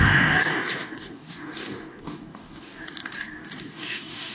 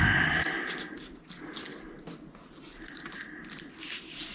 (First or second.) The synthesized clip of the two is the first